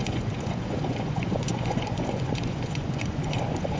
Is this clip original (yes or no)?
no